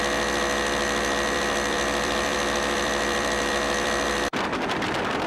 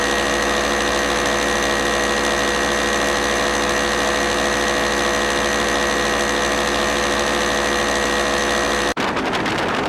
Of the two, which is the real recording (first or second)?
second